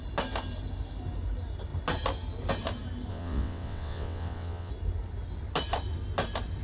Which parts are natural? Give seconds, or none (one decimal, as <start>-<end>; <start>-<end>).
0.0-3.1; 4.7-6.6